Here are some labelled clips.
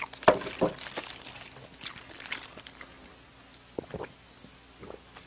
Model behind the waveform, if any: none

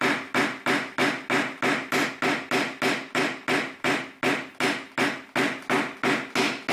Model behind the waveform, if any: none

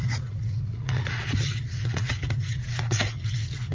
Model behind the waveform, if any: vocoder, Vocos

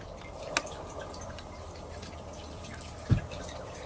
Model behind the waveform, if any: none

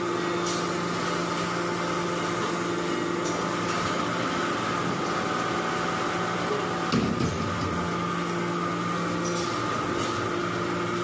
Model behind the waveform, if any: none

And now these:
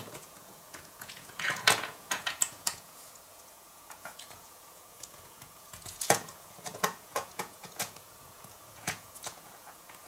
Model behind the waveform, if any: vocoder, Vocos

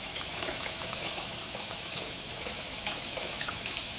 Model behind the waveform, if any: autoencoder, DAC-VAE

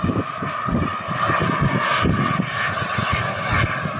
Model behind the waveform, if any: none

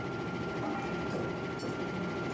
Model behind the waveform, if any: none